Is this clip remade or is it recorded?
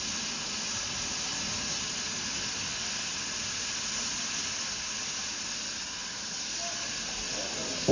recorded